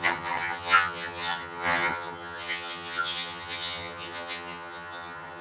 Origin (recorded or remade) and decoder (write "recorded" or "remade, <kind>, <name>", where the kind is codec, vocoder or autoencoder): remade, vocoder, HiFi-GAN